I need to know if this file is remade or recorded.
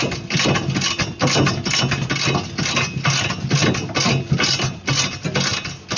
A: recorded